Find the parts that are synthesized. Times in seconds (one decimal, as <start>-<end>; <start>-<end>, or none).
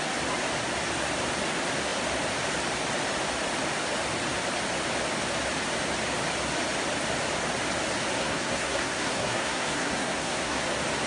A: 8.2-10.6